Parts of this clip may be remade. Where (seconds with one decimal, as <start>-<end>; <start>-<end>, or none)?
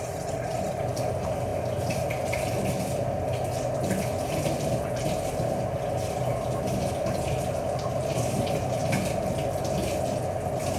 none